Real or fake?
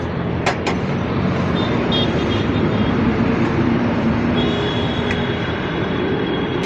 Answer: fake